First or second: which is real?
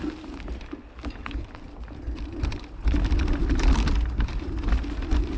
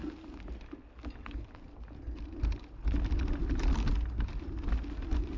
second